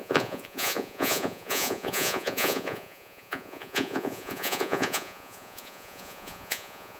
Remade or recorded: remade